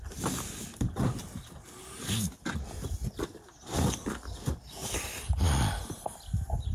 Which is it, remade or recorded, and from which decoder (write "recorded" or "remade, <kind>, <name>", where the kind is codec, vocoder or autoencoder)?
recorded